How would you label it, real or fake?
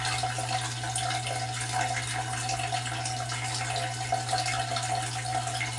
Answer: real